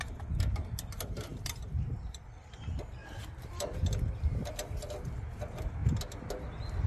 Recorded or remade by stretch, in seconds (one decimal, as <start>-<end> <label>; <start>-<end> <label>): 0.0-5.8 remade; 5.8-6.5 recorded; 6.5-6.9 remade